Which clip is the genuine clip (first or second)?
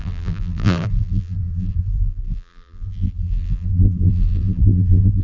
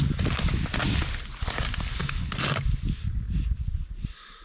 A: second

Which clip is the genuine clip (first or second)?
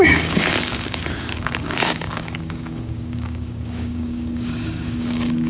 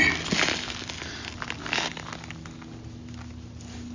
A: second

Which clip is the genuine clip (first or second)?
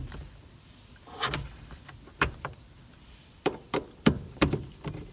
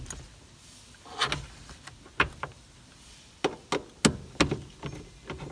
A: second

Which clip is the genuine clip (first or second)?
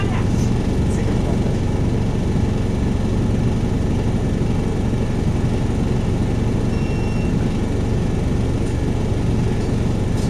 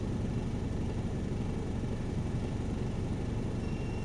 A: first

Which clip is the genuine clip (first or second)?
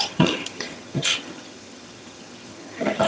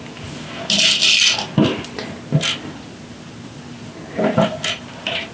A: second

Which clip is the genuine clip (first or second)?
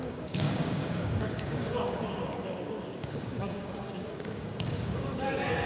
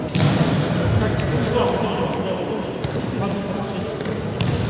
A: second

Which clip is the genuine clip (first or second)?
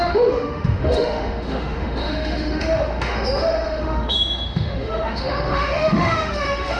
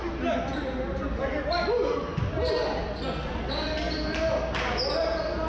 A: second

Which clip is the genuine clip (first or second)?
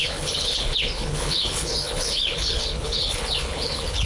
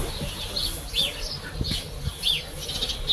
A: second